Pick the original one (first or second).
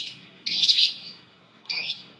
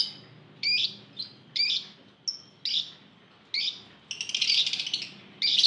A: second